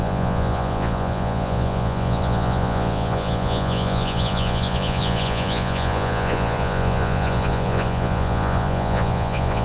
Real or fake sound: fake